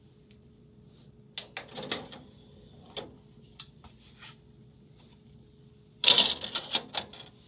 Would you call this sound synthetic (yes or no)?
no